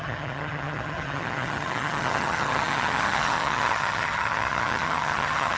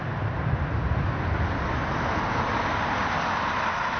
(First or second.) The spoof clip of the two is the first